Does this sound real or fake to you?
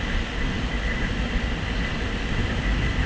real